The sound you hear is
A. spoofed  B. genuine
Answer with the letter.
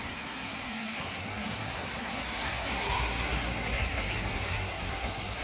A